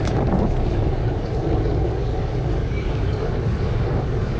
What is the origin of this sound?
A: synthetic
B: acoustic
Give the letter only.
A